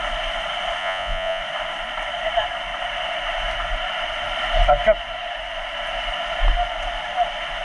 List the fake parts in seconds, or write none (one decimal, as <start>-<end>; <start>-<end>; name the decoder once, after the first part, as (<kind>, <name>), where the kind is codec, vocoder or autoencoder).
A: 0.8-1.4 (vocoder, Vocos)